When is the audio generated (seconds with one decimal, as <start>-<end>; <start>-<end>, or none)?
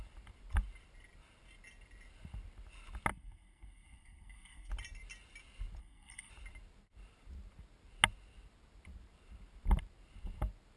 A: 3.1-4.7; 5.8-6.3